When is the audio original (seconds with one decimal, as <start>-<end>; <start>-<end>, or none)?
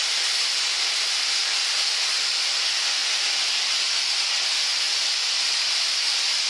0.0-1.4; 2.4-4.7; 6.0-6.5